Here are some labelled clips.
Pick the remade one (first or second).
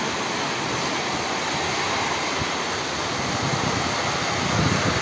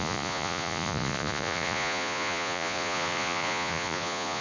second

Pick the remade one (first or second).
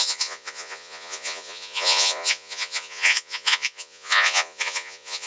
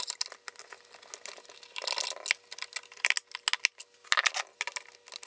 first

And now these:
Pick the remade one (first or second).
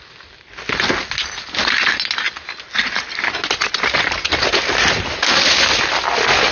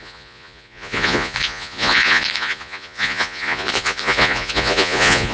second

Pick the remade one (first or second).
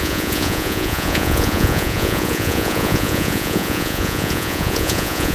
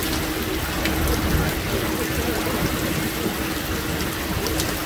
first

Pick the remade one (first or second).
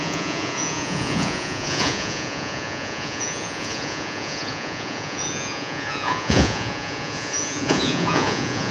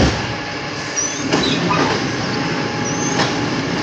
first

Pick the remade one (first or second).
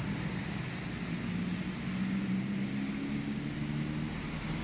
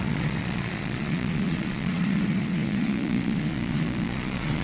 second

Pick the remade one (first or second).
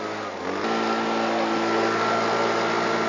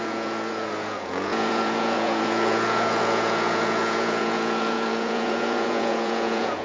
second